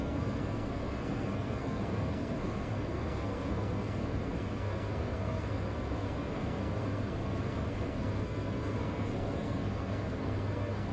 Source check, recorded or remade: remade